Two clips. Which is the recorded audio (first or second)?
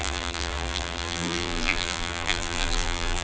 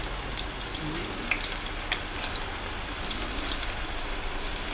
second